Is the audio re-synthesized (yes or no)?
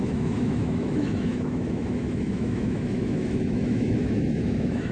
yes